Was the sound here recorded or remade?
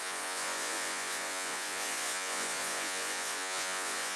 remade